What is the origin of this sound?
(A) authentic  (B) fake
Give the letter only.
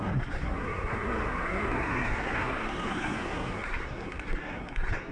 B